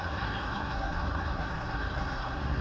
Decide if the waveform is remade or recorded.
remade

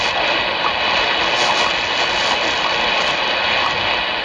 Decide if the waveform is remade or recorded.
recorded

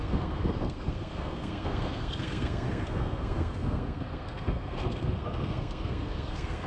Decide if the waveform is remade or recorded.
remade